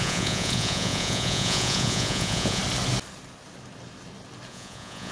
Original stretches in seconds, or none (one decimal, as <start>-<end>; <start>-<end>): 2.6-4.5